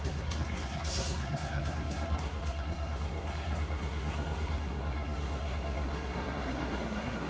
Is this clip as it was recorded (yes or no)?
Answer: no